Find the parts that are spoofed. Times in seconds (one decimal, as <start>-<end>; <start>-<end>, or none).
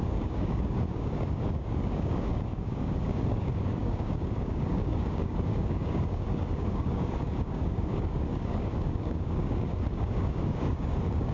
0.0-11.3